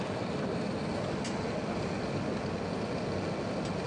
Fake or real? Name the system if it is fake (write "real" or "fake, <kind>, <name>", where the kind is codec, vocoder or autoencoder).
real